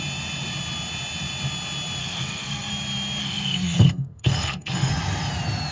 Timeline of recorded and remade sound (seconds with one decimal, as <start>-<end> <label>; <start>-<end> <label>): 0.0-2.0 recorded; 2.0-2.7 remade; 2.7-3.2 recorded; 3.2-4.9 remade; 4.9-5.7 recorded